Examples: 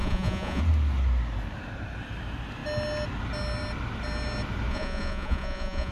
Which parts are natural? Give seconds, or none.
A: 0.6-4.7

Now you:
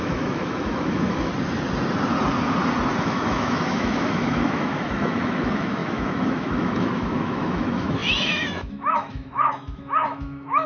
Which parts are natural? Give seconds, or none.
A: 1.3-3.0

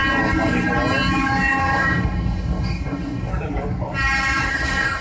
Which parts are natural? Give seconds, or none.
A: 0.0-1.6; 3.3-4.5

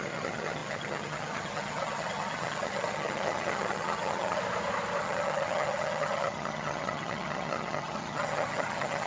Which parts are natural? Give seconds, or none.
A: 4.4-5.0

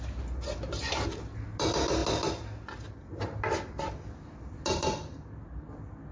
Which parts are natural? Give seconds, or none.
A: 0.0-6.1

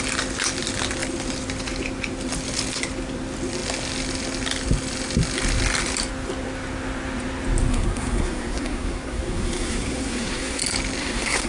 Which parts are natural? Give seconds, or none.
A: 0.0-7.7; 10.6-11.0